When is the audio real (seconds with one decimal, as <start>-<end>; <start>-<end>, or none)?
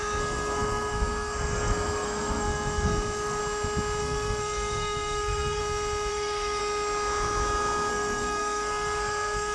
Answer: 3.4-4.0; 5.6-6.1; 6.6-7.9